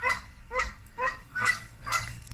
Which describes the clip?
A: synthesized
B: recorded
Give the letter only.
A